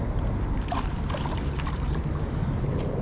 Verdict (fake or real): fake